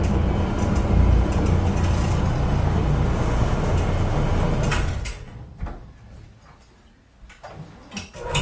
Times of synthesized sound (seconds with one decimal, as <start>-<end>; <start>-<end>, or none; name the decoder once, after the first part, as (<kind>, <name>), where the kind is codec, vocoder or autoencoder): none